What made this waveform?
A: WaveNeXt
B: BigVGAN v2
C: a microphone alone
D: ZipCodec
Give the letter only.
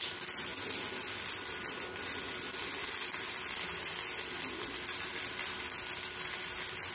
C